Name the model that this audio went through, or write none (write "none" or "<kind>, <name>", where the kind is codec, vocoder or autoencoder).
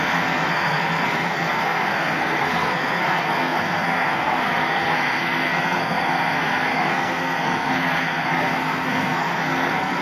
codec, SNAC